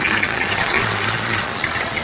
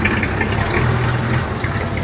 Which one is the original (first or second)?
second